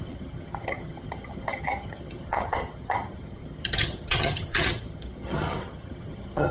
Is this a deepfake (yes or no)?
yes